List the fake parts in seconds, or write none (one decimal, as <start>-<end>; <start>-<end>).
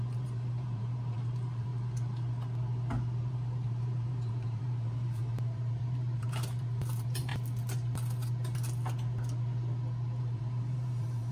0.0-1.7; 3.3-7.3; 10.2-11.3